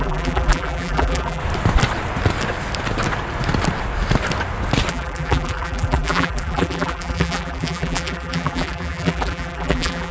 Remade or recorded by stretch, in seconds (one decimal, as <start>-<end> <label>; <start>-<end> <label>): 0.0-1.4 remade; 1.4-4.9 recorded; 4.9-10.1 remade